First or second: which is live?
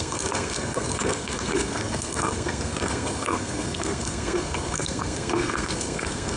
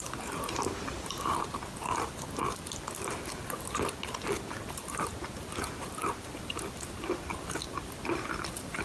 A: second